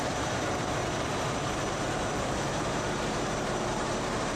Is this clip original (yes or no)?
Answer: no